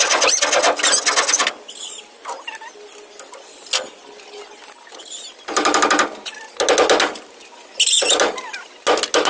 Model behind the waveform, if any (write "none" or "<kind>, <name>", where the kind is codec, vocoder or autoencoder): none